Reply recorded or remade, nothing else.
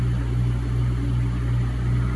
recorded